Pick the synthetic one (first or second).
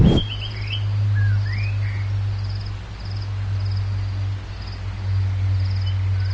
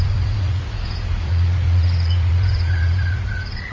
second